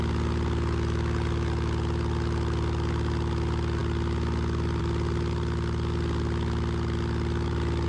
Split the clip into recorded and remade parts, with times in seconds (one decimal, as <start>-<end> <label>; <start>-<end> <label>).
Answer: 0.0-7.9 recorded